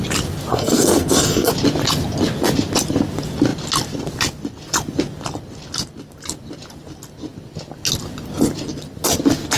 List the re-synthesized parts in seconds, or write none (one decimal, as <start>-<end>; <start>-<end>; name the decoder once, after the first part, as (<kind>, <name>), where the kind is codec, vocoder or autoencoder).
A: 0.5-1.5 (codec, SNAC)